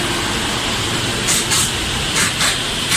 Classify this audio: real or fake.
real